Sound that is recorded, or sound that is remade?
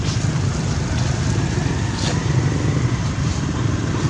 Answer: recorded